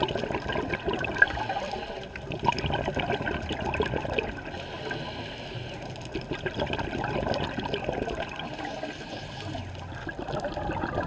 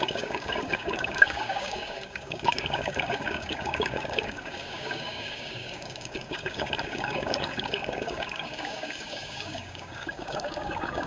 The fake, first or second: second